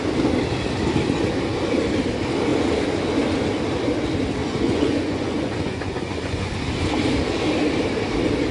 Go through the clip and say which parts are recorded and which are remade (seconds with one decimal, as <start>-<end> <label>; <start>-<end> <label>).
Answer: 0.0-4.4 recorded; 4.4-6.5 remade; 6.5-8.5 recorded